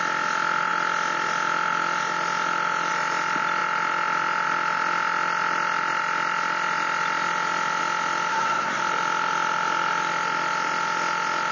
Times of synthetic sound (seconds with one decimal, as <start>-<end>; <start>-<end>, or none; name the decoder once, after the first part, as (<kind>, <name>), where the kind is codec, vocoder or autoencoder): 8.3-8.8 (codec, SNAC)

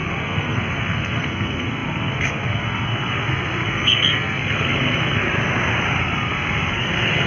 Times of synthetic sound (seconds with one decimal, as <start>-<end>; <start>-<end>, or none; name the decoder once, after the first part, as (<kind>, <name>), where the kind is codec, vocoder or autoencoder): 0.0-5.2 (codec, SNAC); 6.0-7.3

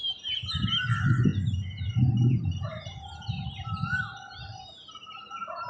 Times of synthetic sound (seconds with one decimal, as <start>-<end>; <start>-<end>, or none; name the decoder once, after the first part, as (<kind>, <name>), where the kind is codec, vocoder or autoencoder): none

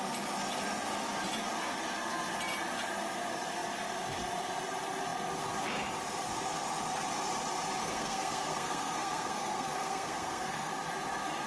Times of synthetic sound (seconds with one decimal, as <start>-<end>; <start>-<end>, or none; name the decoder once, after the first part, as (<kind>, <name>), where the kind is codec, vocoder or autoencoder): 7.8-10.7 (codec, SNAC)

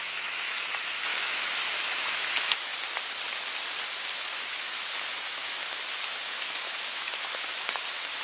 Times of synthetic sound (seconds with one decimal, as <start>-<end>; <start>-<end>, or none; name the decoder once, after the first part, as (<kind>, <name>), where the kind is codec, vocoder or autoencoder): 0.0-2.7 (autoencoder, DAC-VAE); 4.1-8.2

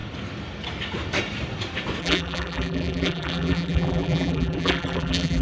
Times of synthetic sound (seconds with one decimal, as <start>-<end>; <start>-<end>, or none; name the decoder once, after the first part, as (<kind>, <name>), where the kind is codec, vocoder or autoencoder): 2.0-5.4 (vocoder, BigVGAN v2)

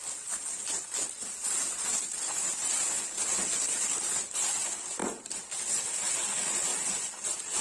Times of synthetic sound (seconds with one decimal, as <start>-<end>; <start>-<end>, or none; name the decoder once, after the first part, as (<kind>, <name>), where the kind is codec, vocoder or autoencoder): 1.9-2.5 (vocoder, BigVGAN v2); 5.0-5.5; 6.7-7.6